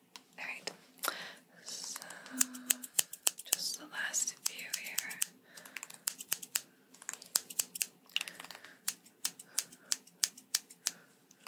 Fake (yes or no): no